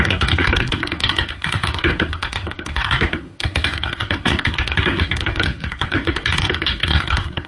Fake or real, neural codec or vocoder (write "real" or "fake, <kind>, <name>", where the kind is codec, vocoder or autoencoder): fake, codec, SNAC